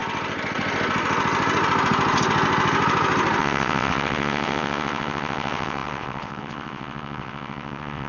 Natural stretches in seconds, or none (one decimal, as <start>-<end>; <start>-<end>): 0.0-3.4